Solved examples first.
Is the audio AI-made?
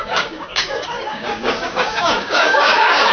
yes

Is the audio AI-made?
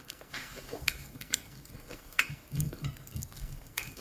yes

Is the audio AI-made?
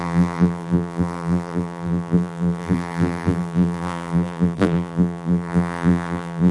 yes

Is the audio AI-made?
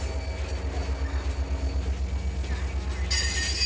no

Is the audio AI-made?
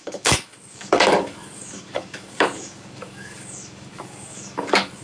yes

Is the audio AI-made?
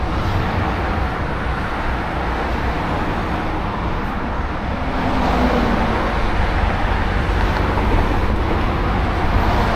no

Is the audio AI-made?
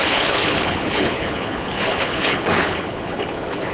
yes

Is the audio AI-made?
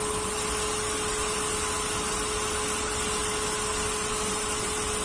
no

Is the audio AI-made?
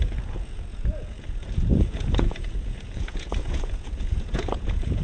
yes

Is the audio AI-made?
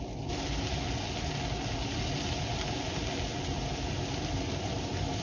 no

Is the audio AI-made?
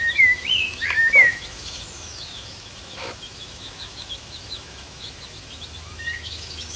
yes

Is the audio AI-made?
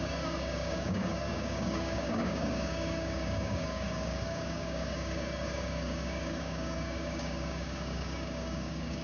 yes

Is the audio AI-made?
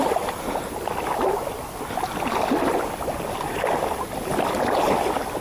no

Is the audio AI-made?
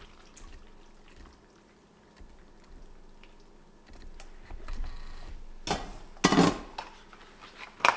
no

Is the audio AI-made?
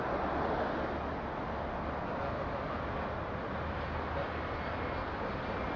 no